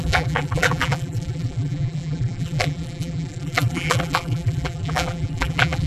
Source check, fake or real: fake